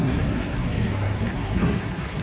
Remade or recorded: remade